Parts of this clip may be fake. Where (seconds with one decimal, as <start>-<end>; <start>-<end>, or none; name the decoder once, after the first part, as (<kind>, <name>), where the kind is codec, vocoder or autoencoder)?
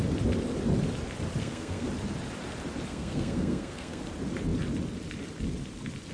1.4-1.9 (codec, SNAC); 2.9-4.0